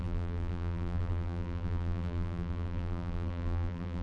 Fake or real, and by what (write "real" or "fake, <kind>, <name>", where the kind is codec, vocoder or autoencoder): fake, vocoder, BigVGAN v2